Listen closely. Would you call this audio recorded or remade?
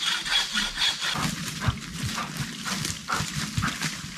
recorded